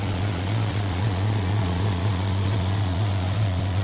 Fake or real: fake